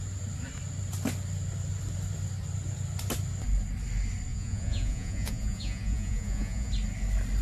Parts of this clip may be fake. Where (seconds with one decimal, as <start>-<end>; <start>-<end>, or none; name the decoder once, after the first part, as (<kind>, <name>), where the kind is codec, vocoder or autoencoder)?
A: 4.3-6.7 (vocoder, Vocos)